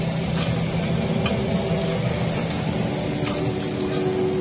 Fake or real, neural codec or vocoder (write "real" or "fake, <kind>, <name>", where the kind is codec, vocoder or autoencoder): real